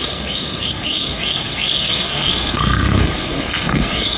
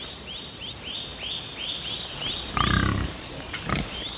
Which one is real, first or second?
second